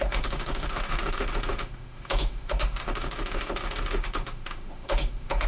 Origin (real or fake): fake